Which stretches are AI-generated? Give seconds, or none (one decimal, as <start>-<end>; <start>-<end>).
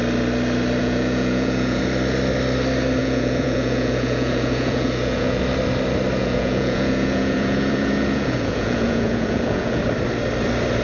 0.8-1.8; 3.0-5.4; 6.2-9.8